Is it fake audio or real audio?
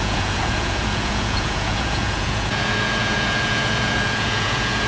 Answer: fake